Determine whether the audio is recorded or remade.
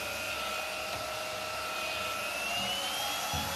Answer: recorded